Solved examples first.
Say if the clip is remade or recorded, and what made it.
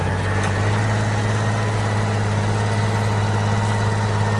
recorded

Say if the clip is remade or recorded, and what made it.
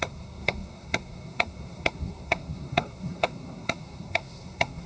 remade, codec, SNAC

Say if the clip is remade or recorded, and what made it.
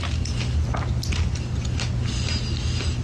recorded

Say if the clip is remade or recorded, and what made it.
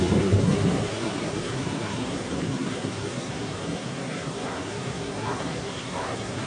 remade, codec, SNAC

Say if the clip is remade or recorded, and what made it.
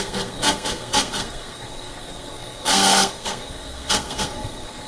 remade, codec, SNAC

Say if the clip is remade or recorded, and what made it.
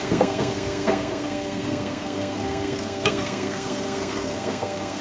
remade, codec, SNAC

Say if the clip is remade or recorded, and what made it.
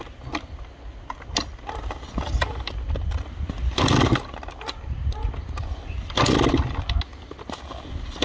recorded